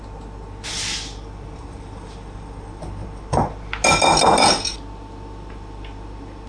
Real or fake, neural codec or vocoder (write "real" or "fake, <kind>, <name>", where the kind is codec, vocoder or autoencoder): real